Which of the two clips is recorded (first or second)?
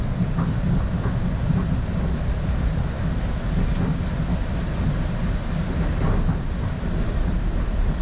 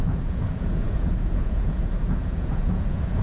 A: first